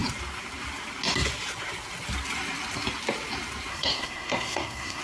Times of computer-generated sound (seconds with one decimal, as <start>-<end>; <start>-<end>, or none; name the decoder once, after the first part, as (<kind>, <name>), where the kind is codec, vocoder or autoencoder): 3.7-5.0 (codec, SNAC)